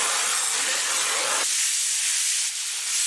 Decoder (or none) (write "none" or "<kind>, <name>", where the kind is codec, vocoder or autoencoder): none